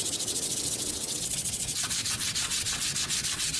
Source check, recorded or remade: remade